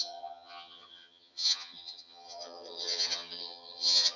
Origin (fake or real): fake